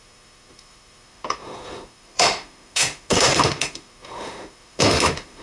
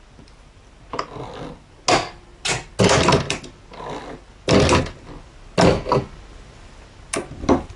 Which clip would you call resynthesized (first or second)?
first